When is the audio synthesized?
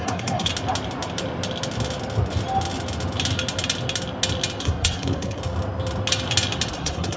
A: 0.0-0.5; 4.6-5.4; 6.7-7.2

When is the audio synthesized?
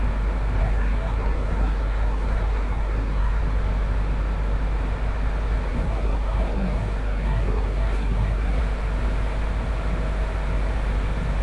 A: 0.6-3.4; 5.7-8.6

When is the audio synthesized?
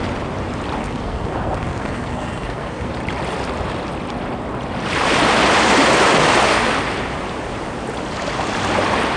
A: 0.8-2.9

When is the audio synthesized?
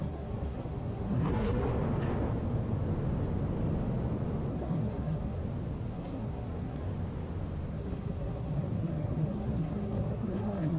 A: 0.0-1.7; 4.5-5.4; 5.9-6.9; 7.7-10.8